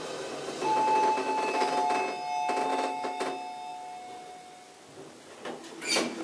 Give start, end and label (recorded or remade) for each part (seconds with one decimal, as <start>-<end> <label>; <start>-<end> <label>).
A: 0.0-1.2 recorded; 1.2-1.7 remade; 1.7-2.7 recorded; 2.7-3.2 remade; 3.2-6.2 recorded

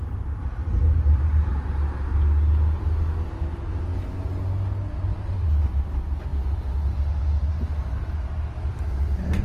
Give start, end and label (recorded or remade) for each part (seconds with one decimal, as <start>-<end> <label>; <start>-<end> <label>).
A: 0.0-0.8 recorded; 0.8-1.5 remade; 1.5-9.4 recorded

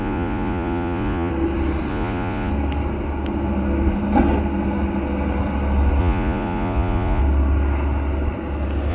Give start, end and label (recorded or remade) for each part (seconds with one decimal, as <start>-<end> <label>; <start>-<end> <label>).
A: 0.0-1.3 remade; 1.3-1.9 recorded; 1.9-2.5 remade; 2.5-6.0 recorded; 6.0-7.2 remade; 7.2-8.9 recorded

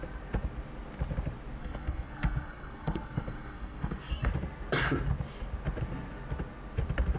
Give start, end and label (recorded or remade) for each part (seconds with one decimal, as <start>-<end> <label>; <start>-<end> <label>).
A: 0.0-1.6 recorded; 1.6-4.3 remade; 4.3-7.2 recorded

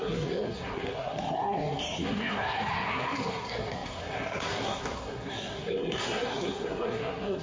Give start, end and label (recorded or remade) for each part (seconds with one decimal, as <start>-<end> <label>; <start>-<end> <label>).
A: 0.0-7.4 remade

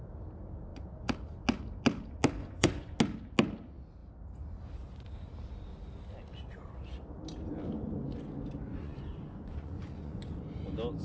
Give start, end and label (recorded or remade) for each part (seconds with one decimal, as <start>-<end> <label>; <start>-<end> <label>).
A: 0.0-2.4 recorded; 2.4-3.0 remade; 3.0-8.7 recorded; 8.7-10.4 remade; 10.4-11.0 recorded

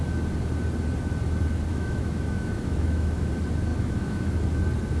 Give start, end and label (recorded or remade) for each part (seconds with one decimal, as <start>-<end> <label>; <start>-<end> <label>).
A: 0.0-1.7 recorded; 1.7-3.3 remade; 3.3-3.7 recorded; 3.7-4.3 remade; 4.3-5.0 recorded

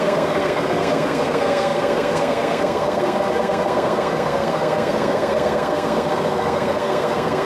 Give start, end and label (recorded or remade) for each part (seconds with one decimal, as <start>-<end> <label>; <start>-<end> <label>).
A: 0.0-7.4 remade